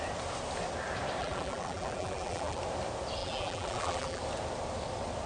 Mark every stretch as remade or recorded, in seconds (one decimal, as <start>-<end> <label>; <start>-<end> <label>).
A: 0.0-1.2 recorded; 1.2-2.6 remade; 2.6-3.2 recorded; 3.2-4.2 remade; 4.2-5.3 recorded